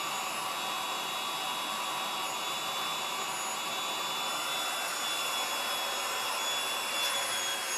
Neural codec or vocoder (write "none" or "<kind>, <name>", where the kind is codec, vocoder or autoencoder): none